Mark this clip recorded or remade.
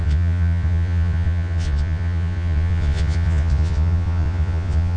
remade